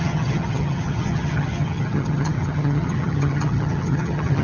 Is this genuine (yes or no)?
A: no